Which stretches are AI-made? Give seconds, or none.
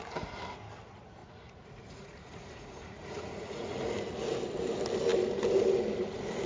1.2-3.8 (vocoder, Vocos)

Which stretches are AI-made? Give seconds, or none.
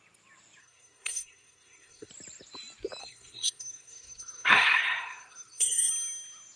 0.6-2.1 (codec, SNAC); 3.0-5.9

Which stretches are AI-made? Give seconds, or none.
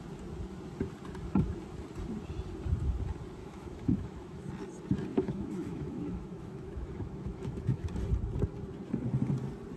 3.4-4.5 (autoencoder, DAC-VAE); 5.1-7.9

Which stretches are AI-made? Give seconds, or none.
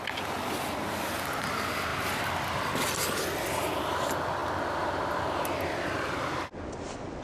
none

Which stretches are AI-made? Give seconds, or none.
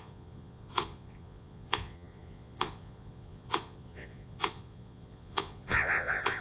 0.0-6.4 (vocoder, Vocos)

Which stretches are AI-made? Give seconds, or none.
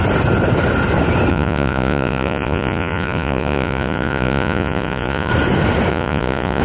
1.3-5.3 (vocoder, Vocos); 5.9-6.6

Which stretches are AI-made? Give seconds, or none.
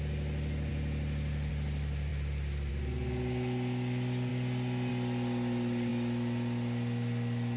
none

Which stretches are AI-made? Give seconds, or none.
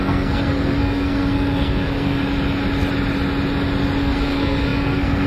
0.0-2.2 (codec, SNAC); 4.0-5.3